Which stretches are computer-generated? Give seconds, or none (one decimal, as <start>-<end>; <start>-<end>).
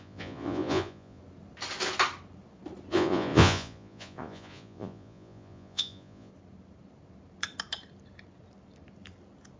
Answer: 0.0-1.2; 2.9-6.3